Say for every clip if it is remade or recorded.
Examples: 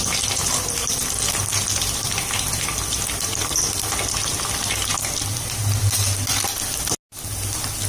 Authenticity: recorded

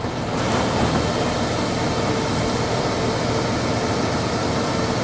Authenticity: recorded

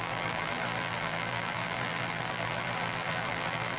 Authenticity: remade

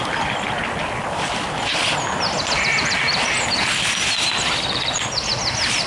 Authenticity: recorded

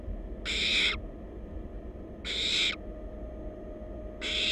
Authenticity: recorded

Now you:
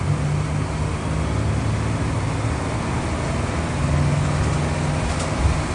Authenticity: recorded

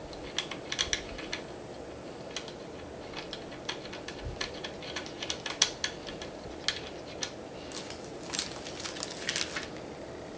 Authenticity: recorded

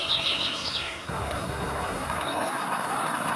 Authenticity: remade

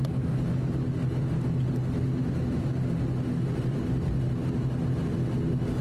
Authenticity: recorded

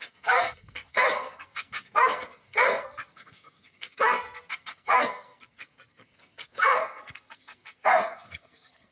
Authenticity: remade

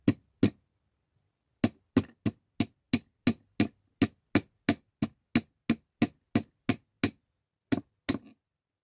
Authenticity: recorded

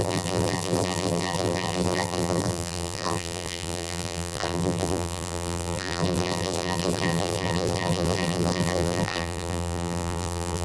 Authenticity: remade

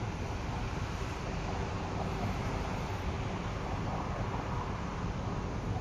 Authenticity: recorded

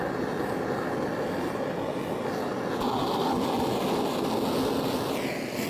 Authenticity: recorded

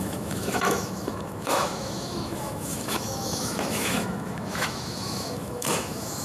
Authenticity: remade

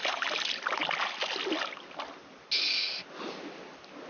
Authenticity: recorded